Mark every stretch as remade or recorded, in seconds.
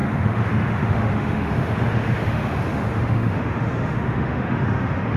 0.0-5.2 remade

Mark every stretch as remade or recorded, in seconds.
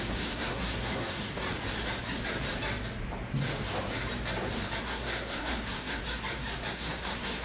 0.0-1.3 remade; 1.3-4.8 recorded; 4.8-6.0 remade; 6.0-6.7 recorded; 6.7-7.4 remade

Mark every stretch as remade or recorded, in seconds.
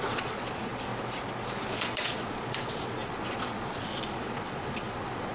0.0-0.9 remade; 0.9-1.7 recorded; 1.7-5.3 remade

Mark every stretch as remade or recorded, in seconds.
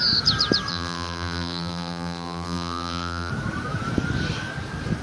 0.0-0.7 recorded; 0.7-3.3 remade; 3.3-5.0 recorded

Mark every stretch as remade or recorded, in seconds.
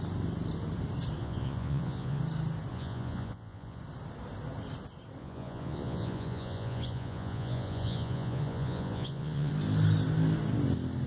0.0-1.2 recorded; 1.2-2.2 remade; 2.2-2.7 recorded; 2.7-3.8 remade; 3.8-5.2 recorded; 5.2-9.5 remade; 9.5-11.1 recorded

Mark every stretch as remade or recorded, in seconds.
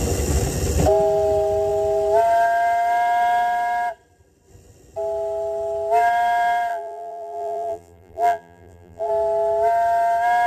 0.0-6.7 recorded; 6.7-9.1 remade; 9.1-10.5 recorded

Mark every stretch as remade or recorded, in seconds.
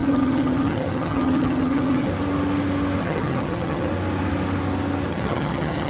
0.0-2.1 remade; 2.1-3.0 recorded; 3.0-3.9 remade; 3.9-5.1 recorded; 5.1-5.9 remade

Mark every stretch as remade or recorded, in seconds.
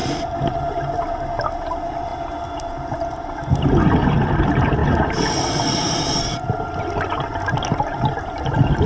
0.0-8.9 recorded